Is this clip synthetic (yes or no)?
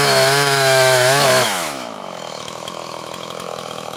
yes